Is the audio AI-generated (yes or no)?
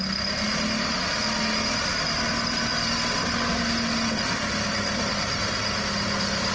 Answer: no